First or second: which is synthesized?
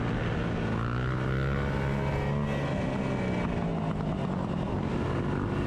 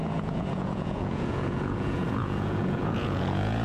second